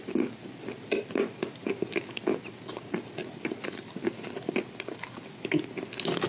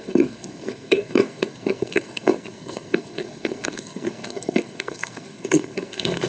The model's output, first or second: second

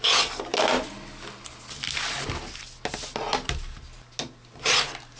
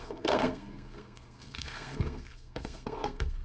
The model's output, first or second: second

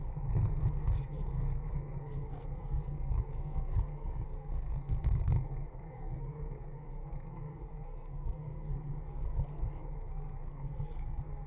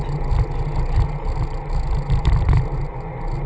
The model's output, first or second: first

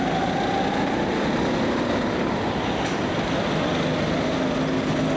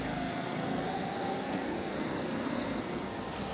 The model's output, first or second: second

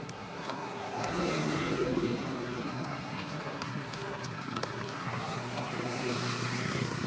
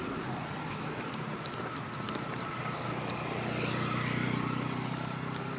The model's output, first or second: first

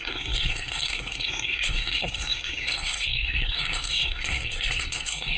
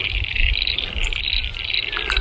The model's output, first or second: first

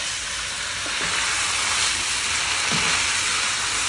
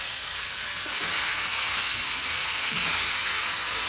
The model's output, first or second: second